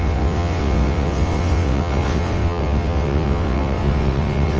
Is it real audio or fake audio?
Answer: fake